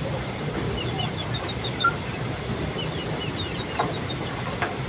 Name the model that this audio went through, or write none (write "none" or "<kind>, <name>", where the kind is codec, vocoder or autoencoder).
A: none